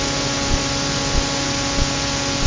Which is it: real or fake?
real